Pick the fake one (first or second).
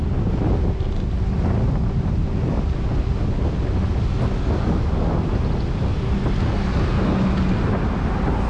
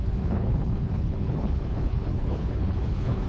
second